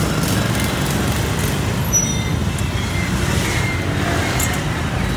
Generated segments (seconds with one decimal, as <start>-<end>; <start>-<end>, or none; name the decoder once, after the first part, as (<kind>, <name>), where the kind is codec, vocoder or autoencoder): none

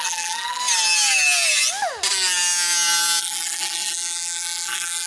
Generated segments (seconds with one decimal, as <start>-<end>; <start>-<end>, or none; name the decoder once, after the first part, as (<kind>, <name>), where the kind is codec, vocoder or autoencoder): 0.0-0.6 (vocoder, BigVGAN v2); 3.2-5.1

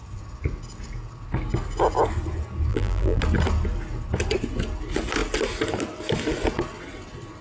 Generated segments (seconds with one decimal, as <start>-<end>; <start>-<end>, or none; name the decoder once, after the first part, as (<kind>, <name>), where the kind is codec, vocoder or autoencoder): 2.7-3.2 (vocoder, BigVGAN v2)

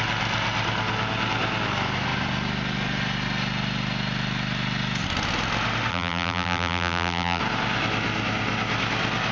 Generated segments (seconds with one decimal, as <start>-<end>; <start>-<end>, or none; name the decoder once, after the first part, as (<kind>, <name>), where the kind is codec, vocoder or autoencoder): 5.9-7.4 (vocoder, BigVGAN v2)

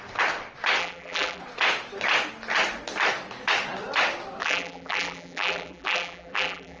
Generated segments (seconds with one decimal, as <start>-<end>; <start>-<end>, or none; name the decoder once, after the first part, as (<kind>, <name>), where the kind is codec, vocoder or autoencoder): 0.8-1.4 (vocoder, BigVGAN v2); 4.4-6.8

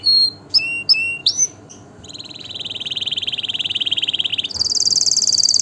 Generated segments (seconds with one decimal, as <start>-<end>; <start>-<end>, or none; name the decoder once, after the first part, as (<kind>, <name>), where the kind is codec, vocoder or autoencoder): 1.2-4.3 (vocoder, BigVGAN v2)

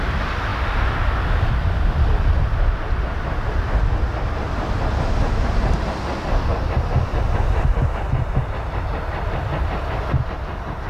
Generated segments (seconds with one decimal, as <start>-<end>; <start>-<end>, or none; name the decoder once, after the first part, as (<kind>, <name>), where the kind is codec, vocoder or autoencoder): 0.5-4.9 (vocoder, BigVGAN v2); 7.1-7.8